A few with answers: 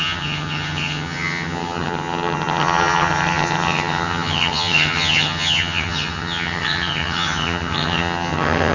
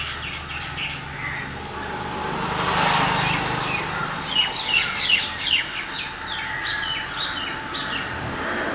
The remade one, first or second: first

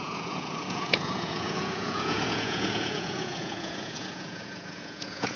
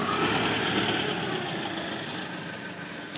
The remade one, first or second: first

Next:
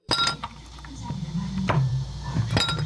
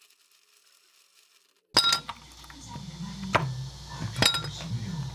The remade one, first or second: first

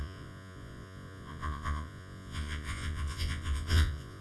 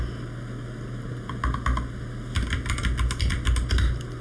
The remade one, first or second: first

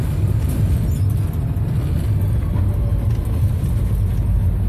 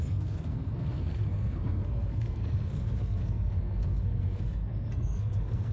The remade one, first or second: second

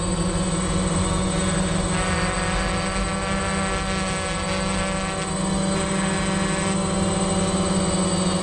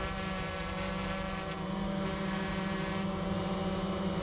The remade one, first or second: second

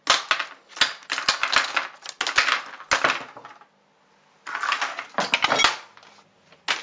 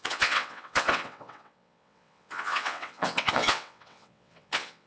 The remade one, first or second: second